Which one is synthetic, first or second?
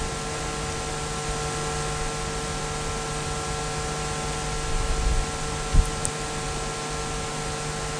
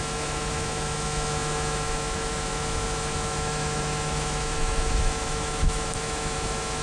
second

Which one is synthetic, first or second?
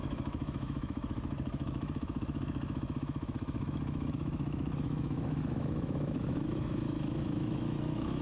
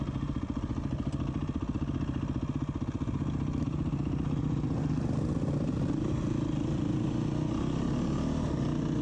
first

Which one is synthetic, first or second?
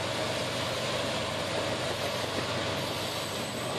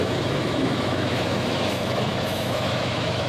second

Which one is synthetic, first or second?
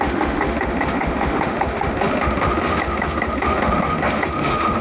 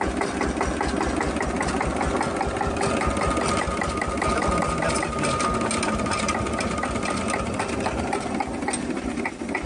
first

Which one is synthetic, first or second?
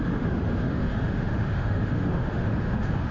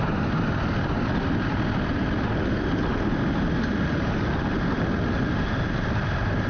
first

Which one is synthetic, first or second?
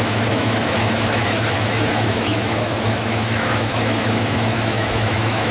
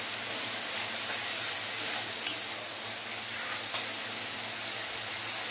first